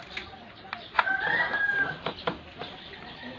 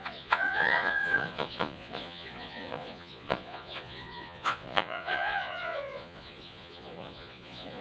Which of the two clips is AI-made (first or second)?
second